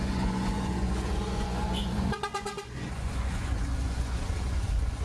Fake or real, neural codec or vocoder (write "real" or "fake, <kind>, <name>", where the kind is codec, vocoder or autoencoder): fake, vocoder, Vocos